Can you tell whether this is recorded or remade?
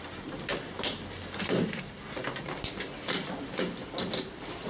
recorded